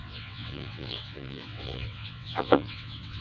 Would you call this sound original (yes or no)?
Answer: no